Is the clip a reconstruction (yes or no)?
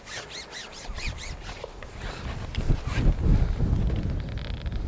no